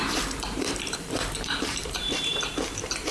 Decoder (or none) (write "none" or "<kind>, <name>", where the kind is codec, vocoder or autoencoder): vocoder, BigVGAN v2